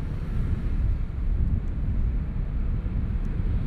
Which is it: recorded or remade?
recorded